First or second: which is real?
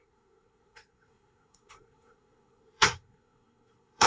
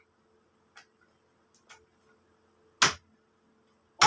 second